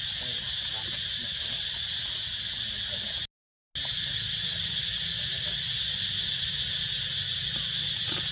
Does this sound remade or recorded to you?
recorded